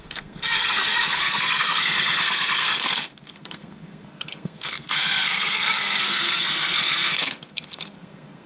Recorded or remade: remade